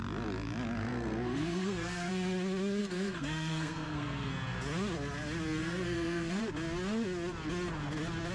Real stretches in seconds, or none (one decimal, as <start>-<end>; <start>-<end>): 0.0-0.8; 2.1-2.8; 4.3-5.6; 6.4-8.3